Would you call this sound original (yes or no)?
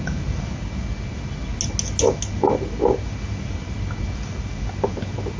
yes